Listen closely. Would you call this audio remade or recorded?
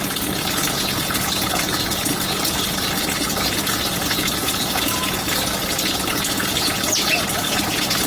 remade